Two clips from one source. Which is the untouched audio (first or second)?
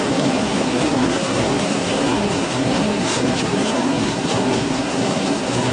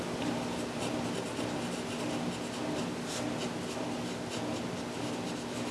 second